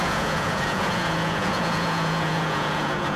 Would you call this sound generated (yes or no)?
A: yes